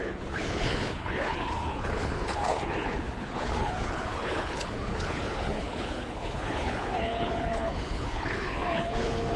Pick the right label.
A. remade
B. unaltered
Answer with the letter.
A